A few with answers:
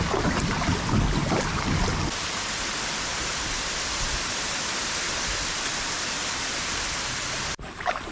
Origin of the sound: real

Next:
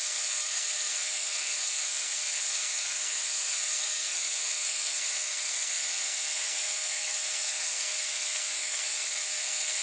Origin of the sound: fake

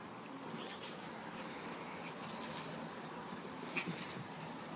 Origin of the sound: real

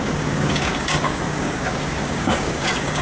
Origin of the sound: fake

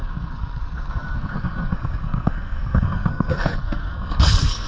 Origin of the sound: fake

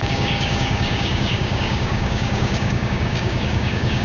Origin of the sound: fake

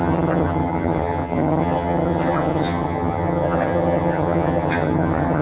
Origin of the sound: fake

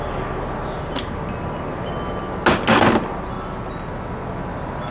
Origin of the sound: real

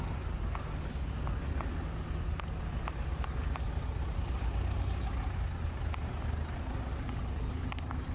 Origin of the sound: real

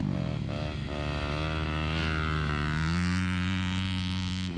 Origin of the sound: real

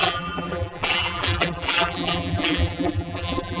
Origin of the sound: fake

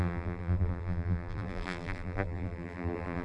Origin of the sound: fake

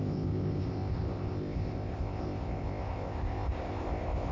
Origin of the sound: fake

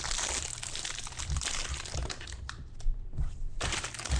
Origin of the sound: real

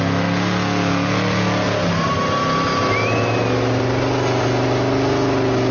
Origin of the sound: real